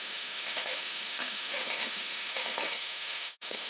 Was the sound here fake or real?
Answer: fake